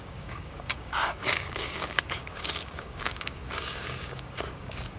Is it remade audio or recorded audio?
remade